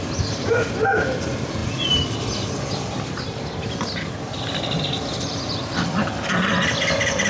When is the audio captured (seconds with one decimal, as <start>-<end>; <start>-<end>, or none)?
0.0-7.3